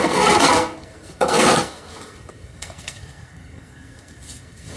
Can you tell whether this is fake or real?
fake